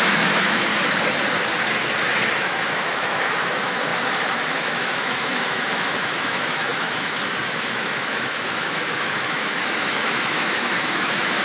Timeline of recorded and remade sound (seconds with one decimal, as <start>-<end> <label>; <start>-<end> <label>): 0.0-0.7 remade; 0.7-2.4 recorded; 2.4-3.9 remade; 3.9-4.5 recorded; 4.5-11.4 remade